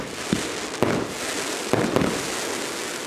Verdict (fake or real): real